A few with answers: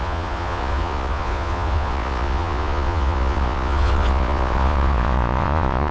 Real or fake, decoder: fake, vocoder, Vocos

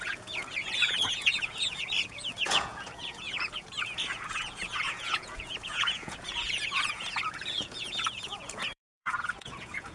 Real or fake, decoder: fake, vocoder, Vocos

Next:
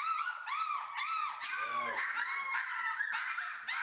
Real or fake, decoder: real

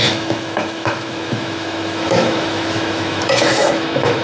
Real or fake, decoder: fake, autoencoder, DAC-VAE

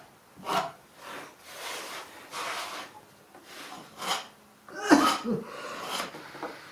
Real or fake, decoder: real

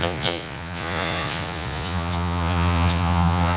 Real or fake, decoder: fake, vocoder, Vocos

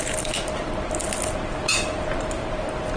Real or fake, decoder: real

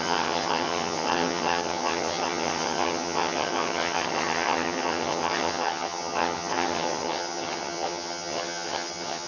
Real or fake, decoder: fake, vocoder, HiFi-GAN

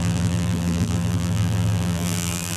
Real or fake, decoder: fake, vocoder, BigVGAN v2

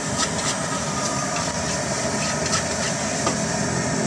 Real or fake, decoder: real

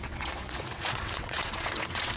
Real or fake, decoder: fake, vocoder, WaveNeXt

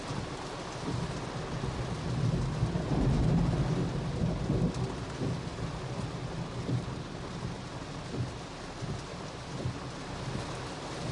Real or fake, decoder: real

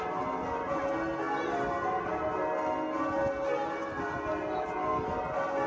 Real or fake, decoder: real